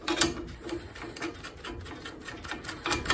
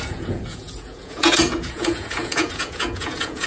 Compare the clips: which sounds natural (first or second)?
first